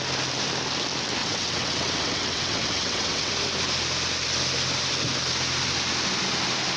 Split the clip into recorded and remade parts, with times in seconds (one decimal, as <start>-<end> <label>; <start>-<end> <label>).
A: 0.0-1.2 recorded; 1.2-3.3 remade; 3.3-6.8 recorded